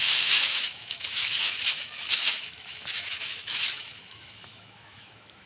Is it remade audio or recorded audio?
remade